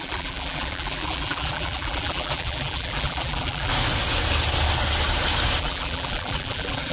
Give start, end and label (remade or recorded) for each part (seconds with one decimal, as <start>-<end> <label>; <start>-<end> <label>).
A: 0.0-3.7 remade; 3.7-5.6 recorded; 5.6-6.9 remade

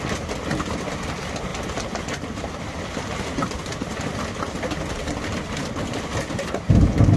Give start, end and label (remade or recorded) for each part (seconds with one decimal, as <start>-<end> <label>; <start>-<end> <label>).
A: 0.0-7.2 recorded